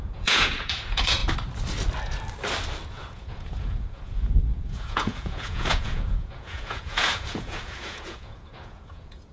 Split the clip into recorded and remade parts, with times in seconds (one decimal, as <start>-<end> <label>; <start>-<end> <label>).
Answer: 0.0-1.2 remade; 1.2-2.9 recorded; 2.9-9.3 remade